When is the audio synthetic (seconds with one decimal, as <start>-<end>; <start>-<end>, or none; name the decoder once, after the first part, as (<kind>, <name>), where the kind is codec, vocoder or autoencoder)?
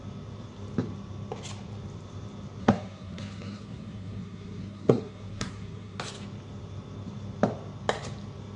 2.6-6.0 (codec, SNAC)